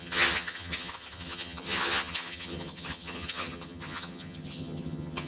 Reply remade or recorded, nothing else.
remade